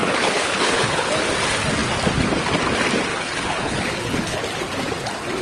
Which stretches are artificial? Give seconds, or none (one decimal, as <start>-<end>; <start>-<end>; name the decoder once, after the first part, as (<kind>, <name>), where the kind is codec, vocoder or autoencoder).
0.0-1.1 (codec, HILCodec); 3.1-4.4

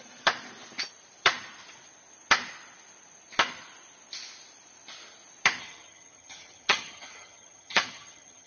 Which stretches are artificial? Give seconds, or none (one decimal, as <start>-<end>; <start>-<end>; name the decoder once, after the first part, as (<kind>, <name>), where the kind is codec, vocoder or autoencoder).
5.6-8.5 (vocoder, HiFi-GAN)

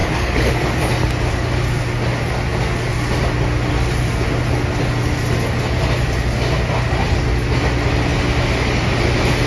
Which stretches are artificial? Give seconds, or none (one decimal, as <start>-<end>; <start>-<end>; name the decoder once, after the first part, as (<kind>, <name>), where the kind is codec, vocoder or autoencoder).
0.0-0.5 (codec, DAC)

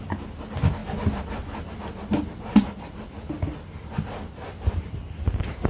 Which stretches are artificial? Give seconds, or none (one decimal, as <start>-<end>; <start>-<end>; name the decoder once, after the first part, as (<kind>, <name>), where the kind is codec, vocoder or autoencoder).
none